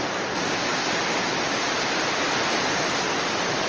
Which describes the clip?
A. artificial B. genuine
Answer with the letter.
B